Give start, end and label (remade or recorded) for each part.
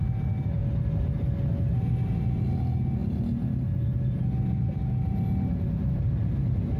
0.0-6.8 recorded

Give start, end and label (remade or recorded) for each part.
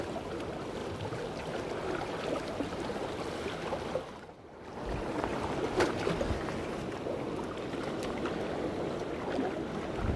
0.0-5.3 recorded; 5.3-6.1 remade; 6.1-10.2 recorded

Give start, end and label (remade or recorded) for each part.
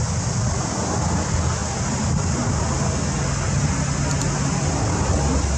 0.0-5.6 recorded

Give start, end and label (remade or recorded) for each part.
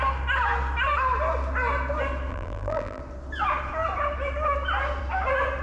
0.0-2.3 recorded; 2.3-3.0 remade; 3.0-5.6 recorded